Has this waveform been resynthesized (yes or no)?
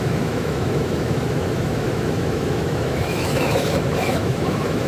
yes